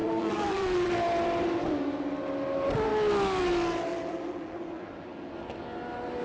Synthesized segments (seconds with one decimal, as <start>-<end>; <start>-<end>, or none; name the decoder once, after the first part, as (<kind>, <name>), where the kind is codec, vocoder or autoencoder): 0.0-0.9 (vocoder, BigVGAN v2); 3.9-5.3